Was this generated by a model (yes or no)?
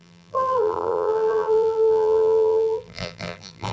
yes